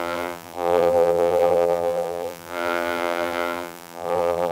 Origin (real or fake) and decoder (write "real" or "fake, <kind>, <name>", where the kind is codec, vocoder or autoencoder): fake, vocoder, BigVGAN v2